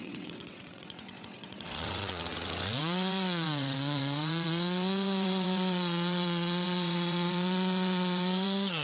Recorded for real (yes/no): no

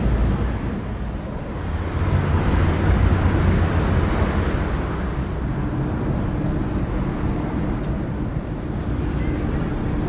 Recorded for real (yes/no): yes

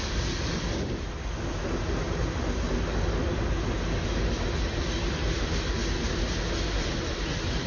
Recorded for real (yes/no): yes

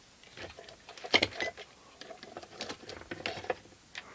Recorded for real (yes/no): yes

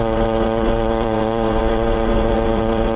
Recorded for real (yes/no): no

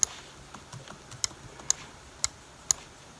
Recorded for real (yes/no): yes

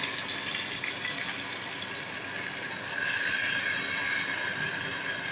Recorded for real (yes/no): yes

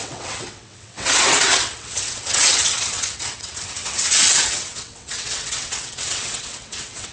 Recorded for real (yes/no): no